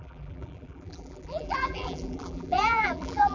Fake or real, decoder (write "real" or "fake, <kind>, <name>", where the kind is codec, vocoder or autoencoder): fake, vocoder, BigVGAN v2